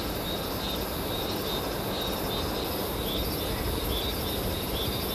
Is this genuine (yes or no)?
yes